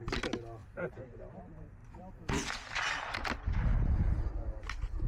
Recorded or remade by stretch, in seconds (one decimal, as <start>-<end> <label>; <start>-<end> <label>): 0.0-0.6 recorded; 0.6-1.4 remade; 1.4-1.8 recorded; 1.8-3.1 remade; 3.1-5.1 recorded